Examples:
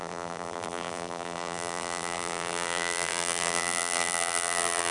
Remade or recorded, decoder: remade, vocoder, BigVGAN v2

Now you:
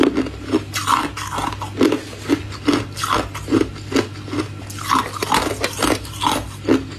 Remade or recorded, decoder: recorded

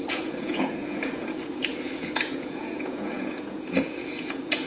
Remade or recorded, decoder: remade, vocoder, Vocos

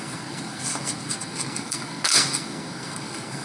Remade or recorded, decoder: remade, codec, SNAC